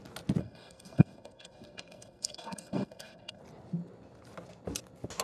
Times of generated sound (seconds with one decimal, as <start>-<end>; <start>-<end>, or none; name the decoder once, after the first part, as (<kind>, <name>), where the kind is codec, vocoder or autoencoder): 0.4-3.4 (codec, SNAC)